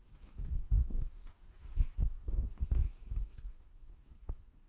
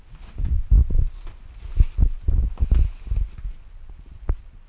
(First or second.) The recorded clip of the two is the second